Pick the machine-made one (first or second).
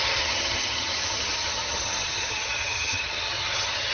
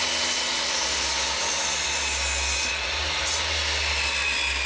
first